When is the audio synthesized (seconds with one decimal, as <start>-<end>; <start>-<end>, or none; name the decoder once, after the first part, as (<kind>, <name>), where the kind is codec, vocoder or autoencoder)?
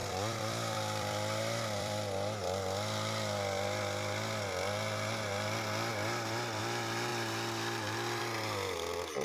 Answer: 0.0-2.6 (vocoder, BigVGAN v2); 5.9-6.6; 7.1-8.2